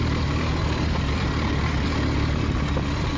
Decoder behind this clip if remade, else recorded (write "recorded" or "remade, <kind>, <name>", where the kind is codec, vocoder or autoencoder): recorded